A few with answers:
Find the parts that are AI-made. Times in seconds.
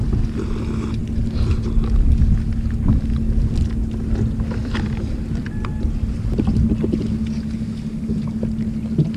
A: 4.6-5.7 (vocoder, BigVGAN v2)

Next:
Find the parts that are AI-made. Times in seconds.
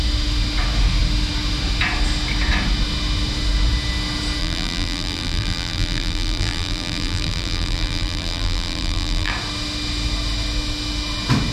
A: 4.4-9.3 (vocoder, BigVGAN v2)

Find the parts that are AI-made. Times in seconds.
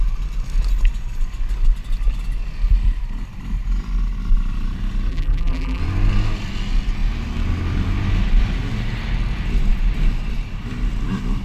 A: 5.1-5.8 (vocoder, BigVGAN v2)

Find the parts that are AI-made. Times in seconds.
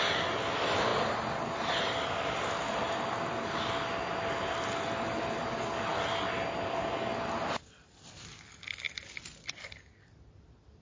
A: none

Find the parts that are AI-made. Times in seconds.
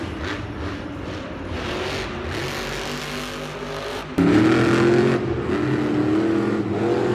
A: 3.9-4.4 (vocoder, BigVGAN v2)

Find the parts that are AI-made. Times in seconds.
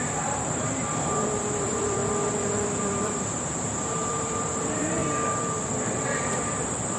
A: 0.0-2.0 (vocoder, BigVGAN v2); 2.8-5.0; 6.2-7.0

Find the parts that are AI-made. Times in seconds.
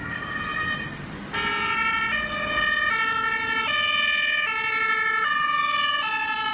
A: 0.5-1.1 (vocoder, BigVGAN v2)